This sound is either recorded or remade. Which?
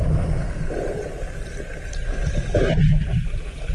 recorded